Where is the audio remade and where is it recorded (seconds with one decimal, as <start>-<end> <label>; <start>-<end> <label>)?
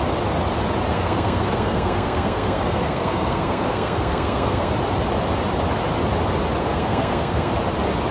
0.0-0.9 recorded; 0.9-4.7 remade; 4.7-6.6 recorded; 6.6-7.5 remade; 7.5-8.1 recorded